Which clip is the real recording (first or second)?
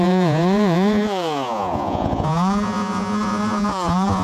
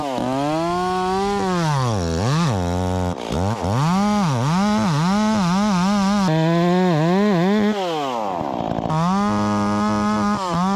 second